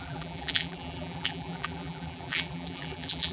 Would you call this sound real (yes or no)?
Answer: no